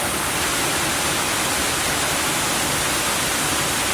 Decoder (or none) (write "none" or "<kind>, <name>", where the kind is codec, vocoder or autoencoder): none